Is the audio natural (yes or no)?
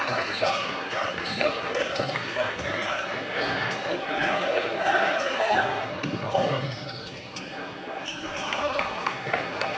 no